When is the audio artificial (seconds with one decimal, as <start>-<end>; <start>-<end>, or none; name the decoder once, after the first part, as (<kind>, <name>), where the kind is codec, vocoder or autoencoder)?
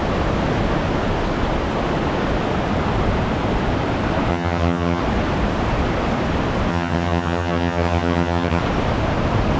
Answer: 4.3-5.0 (vocoder, HiFi-GAN); 6.7-8.6